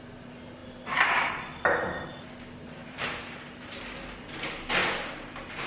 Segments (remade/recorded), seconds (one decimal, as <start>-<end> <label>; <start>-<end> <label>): 0.0-2.8 recorded; 2.8-3.9 remade; 3.9-4.8 recorded; 4.8-5.7 remade